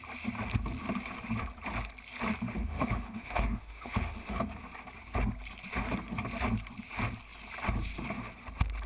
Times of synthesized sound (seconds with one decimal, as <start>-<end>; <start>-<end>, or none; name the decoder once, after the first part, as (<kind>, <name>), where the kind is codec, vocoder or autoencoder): 2.6-4.4 (autoencoder, DAC-VAE)